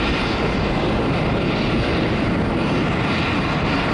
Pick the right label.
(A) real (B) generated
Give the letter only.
A